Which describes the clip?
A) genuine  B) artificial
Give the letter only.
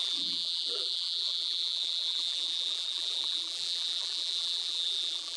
B